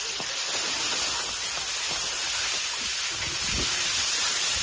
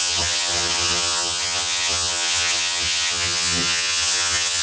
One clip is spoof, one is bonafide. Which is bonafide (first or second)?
first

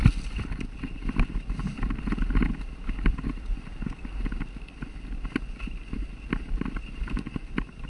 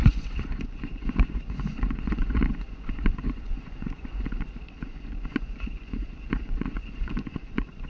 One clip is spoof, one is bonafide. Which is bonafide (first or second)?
first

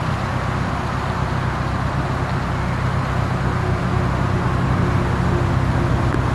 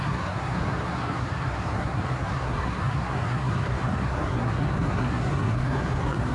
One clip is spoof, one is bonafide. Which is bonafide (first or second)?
first